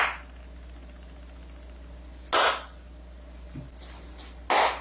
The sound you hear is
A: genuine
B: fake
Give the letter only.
A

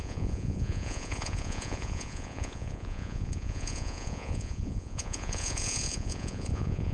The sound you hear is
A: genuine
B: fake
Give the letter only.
B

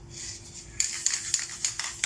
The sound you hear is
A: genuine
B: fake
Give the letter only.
A